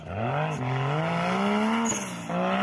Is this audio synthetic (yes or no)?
no